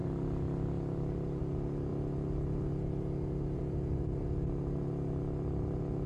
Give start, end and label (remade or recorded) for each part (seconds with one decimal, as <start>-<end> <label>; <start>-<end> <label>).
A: 0.0-6.1 recorded